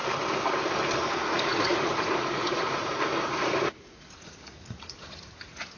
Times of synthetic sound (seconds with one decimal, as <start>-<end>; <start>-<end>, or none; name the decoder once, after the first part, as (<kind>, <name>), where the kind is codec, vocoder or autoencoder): 1.1-5.8 (vocoder, Vocos)